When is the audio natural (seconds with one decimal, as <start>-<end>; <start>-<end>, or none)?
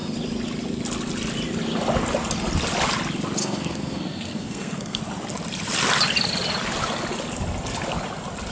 0.0-3.4; 5.0-8.5